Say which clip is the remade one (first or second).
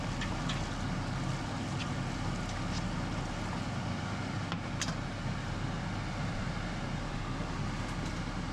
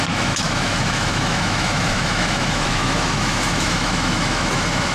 second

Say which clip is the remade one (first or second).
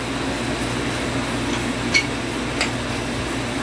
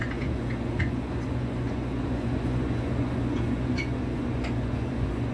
second